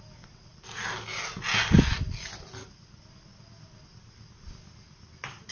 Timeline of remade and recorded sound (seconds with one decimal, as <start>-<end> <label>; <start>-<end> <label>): 0.0-5.5 recorded